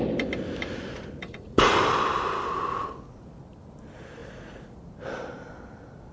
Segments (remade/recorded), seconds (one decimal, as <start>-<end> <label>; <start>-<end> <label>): 0.0-1.2 recorded; 1.2-1.7 remade; 1.7-4.2 recorded; 4.2-4.8 remade; 4.8-6.1 recorded